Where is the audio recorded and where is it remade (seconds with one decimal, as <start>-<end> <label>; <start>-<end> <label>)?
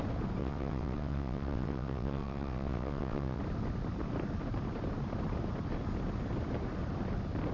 0.0-0.4 recorded; 0.4-3.4 remade; 3.4-7.5 recorded